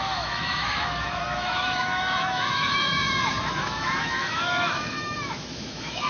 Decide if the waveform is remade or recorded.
remade